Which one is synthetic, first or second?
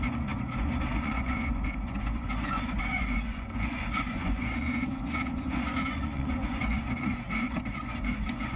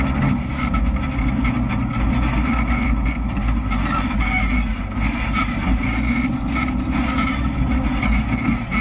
first